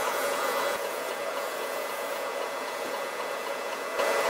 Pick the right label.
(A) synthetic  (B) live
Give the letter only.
A